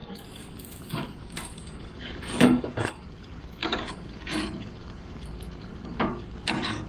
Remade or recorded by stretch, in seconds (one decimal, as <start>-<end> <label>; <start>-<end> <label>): 0.0-6.9 remade